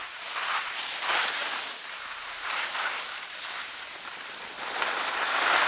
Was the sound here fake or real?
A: real